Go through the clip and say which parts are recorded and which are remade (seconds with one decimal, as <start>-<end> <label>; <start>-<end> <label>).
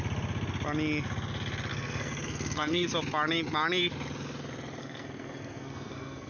0.0-1.7 recorded; 1.7-2.9 remade; 2.9-4.8 recorded; 4.8-6.3 remade